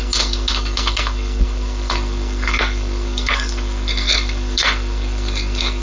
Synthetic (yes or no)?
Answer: yes